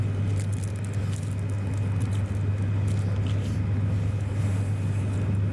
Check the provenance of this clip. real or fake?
real